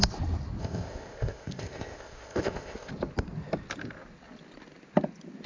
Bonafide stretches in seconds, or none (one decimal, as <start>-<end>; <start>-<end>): 0.0-0.6; 2.9-5.5

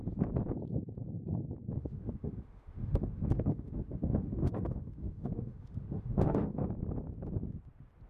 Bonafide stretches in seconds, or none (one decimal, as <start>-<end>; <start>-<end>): 0.0-1.8; 6.7-8.1

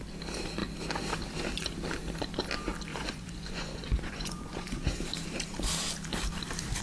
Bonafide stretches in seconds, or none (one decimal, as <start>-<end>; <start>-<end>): 0.0-2.9; 5.0-6.8

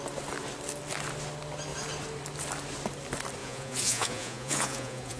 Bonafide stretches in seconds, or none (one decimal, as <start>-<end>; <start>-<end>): 0.0-3.4

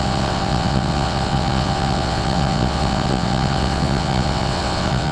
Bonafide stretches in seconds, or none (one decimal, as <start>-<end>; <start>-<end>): none

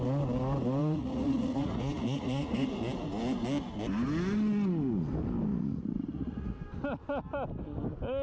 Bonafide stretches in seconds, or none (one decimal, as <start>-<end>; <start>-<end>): 0.0-0.8; 2.7-5.5; 6.6-8.2